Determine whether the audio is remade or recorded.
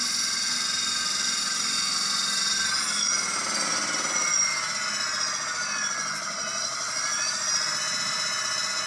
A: recorded